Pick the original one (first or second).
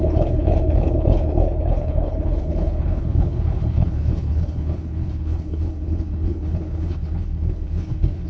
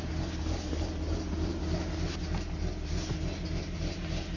second